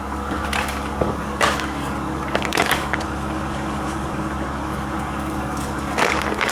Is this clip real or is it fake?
fake